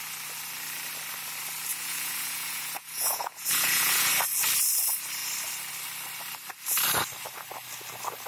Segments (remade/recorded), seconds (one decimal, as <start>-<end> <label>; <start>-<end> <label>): 0.0-1.7 recorded; 1.7-4.1 remade; 4.1-8.3 recorded

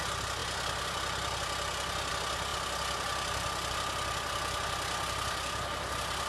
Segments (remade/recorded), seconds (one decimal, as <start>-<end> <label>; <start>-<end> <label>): 0.0-6.3 recorded

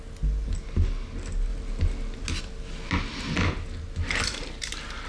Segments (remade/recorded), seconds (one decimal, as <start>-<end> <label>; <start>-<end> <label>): 0.0-5.1 recorded